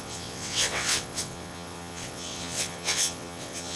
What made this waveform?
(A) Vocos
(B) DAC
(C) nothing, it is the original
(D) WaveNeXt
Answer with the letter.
D